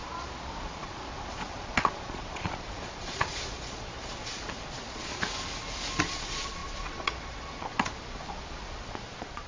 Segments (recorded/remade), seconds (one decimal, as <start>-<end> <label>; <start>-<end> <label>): 0.0-5.1 remade; 5.1-6.0 recorded; 6.0-9.5 remade